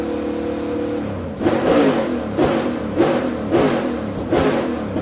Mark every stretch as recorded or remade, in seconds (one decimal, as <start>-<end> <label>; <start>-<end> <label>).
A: 0.0-2.4 recorded; 2.4-3.3 remade; 3.3-5.0 recorded

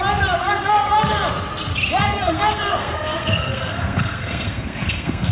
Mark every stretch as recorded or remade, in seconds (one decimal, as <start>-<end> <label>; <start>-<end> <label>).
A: 0.0-0.4 recorded; 0.4-0.9 remade; 0.9-2.0 recorded; 2.0-5.3 remade

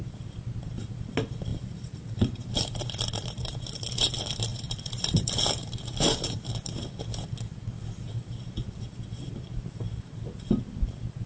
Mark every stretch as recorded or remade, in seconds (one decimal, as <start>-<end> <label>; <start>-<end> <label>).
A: 0.0-1.5 recorded; 1.5-3.9 remade; 3.9-4.5 recorded; 4.5-6.5 remade; 6.5-11.3 recorded

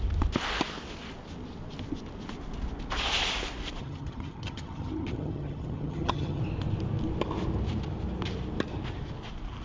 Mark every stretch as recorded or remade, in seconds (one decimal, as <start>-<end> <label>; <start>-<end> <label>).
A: 0.0-3.8 recorded; 3.8-6.4 remade; 6.4-9.6 recorded

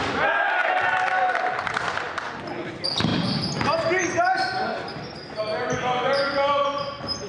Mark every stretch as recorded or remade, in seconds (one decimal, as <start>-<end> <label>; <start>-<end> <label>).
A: 0.0-7.3 recorded

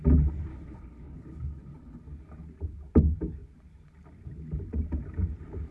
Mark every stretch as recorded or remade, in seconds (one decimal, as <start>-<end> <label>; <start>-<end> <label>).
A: 0.0-0.5 recorded; 0.5-2.0 remade; 2.0-5.7 recorded

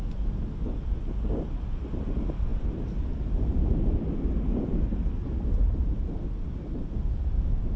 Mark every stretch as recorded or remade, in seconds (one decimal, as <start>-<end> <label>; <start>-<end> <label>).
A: 0.0-7.8 recorded

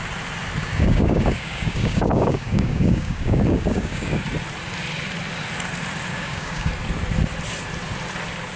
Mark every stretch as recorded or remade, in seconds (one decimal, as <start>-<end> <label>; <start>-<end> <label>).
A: 0.0-0.6 recorded; 0.6-4.2 remade; 4.2-6.1 recorded; 6.1-6.7 remade; 6.7-8.6 recorded